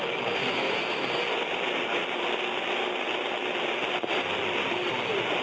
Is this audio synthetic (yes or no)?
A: no